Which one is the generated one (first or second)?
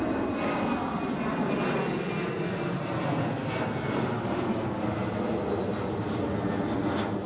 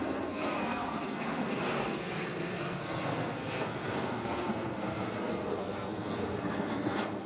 second